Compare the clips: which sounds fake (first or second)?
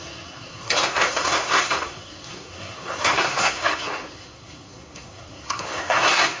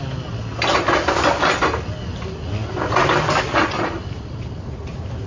first